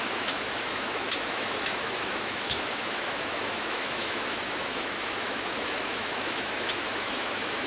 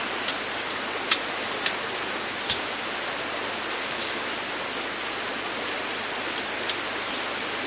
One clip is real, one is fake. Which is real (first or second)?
second